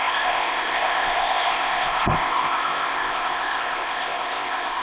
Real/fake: fake